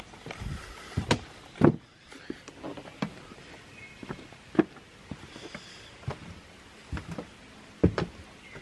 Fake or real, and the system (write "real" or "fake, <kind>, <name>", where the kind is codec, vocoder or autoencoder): real